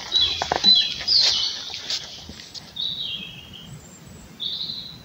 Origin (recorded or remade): recorded